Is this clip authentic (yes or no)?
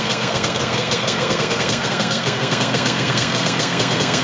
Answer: no